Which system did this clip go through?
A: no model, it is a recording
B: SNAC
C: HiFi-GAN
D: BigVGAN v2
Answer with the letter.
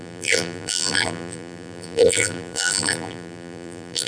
D